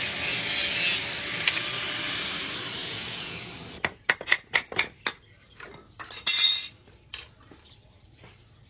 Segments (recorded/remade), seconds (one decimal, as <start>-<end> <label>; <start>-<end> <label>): 0.0-2.8 recorded; 2.8-3.5 remade; 3.5-8.7 recorded